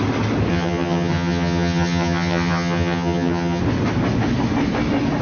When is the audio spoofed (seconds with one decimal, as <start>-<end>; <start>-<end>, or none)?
0.5-3.6